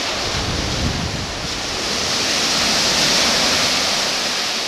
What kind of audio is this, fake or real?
real